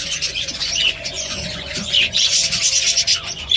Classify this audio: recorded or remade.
remade